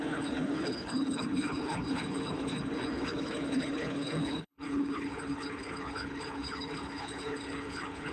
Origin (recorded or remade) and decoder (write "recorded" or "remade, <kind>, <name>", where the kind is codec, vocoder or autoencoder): remade, codec, HILCodec